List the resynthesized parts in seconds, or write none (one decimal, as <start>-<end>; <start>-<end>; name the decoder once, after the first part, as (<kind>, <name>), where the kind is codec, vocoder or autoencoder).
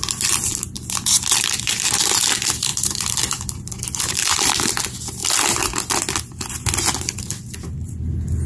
0.5-1.6 (vocoder, BigVGAN v2); 2.7-4.1